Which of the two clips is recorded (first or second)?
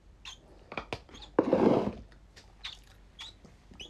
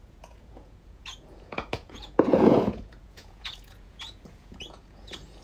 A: first